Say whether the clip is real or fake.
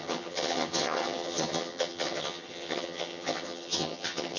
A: fake